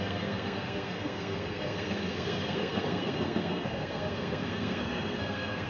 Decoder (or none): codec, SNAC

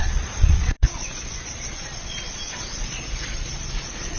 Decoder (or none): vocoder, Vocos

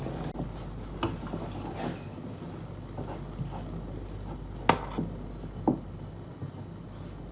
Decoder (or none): none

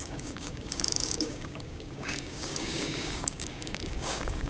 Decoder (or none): codec, DAC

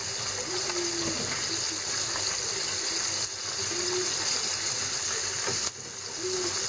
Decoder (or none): none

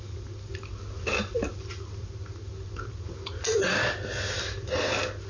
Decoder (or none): none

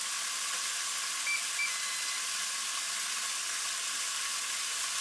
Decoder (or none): none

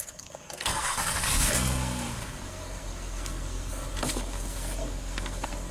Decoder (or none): codec, SNAC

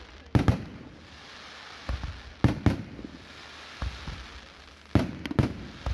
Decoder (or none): none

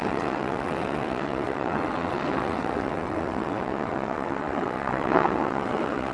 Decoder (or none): vocoder, WaveNeXt